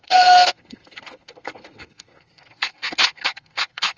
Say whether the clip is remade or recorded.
remade